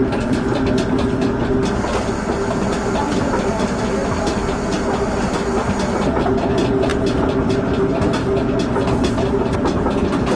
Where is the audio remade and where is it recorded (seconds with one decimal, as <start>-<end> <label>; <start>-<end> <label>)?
0.0-10.4 recorded